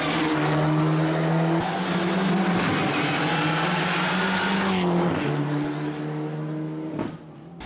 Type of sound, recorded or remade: recorded